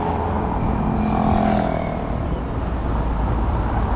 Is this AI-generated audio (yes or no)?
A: no